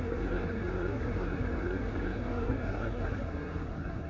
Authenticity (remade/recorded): remade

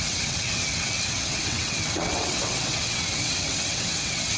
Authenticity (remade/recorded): remade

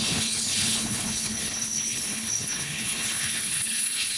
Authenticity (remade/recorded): remade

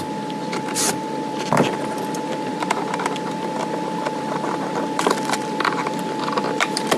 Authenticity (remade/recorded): remade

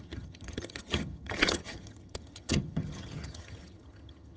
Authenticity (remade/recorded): remade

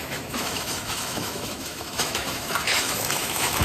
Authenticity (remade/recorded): remade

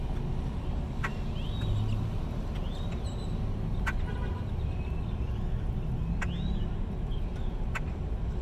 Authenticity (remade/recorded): recorded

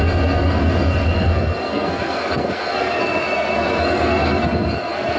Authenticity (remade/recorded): remade